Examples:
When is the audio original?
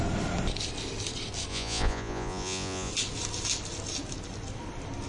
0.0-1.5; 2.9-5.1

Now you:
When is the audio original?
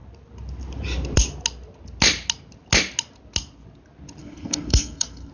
0.0-4.2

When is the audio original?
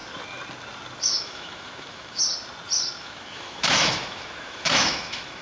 0.0-1.0; 2.2-3.0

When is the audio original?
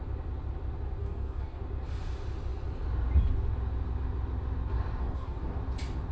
0.0-1.0; 1.6-5.0; 5.6-6.1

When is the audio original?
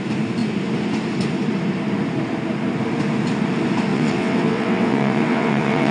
0.0-3.9